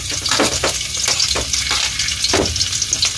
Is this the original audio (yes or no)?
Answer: yes